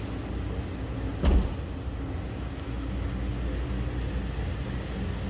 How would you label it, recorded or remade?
recorded